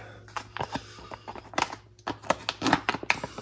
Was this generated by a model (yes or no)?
no